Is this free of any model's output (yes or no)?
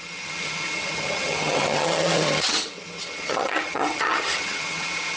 no